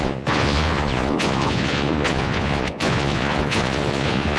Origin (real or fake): fake